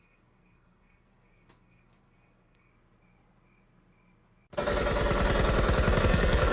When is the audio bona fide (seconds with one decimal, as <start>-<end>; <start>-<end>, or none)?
2.7-6.0